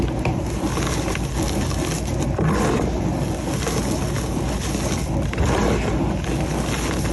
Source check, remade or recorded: recorded